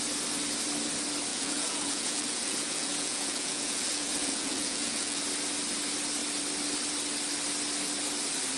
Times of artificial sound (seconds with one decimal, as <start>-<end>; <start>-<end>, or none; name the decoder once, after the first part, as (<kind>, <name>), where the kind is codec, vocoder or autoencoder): 1.3-5.2 (vocoder, Vocos)